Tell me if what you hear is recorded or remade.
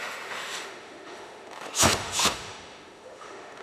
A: remade